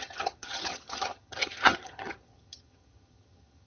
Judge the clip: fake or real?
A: fake